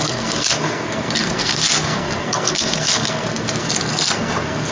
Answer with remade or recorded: remade